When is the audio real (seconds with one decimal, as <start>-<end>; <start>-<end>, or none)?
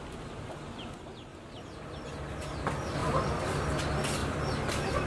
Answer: 0.0-3.0; 3.8-5.1